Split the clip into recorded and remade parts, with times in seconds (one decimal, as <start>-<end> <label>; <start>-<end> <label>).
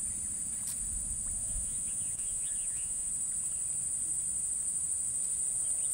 0.0-1.4 recorded; 1.4-3.1 remade; 3.1-5.9 recorded